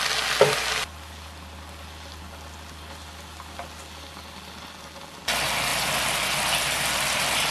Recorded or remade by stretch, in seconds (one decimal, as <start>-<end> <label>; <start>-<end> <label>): 0.0-5.7 recorded; 5.7-7.5 remade